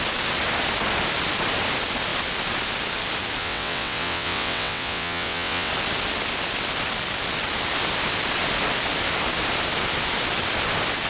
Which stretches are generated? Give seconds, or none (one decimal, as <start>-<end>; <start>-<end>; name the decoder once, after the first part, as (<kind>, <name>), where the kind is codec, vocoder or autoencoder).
3.4-5.7 (vocoder, WaveNeXt)